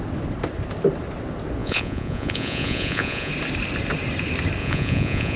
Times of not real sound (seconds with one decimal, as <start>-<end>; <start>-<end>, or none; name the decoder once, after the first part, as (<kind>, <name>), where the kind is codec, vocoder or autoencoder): 1.6-3.3 (vocoder, Vocos); 4.6-5.4